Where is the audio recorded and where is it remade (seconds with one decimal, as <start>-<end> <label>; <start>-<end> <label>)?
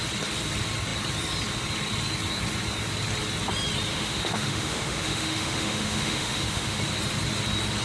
0.0-3.9 recorded; 3.9-6.8 remade; 6.8-7.8 recorded